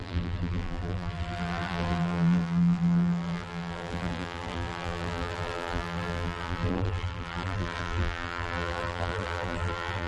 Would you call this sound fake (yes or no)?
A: yes